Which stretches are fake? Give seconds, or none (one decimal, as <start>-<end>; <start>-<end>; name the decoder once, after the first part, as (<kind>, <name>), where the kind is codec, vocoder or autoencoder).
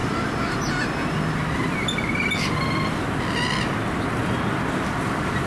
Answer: none